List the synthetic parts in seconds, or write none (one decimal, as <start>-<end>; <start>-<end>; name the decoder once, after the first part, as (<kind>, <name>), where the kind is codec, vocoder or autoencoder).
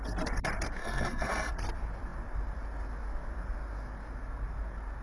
0.8-1.5 (codec, SNAC)